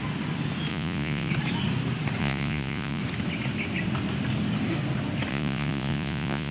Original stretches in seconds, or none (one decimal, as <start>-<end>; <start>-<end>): 0.0-0.7; 1.3-2.2; 3.0-5.3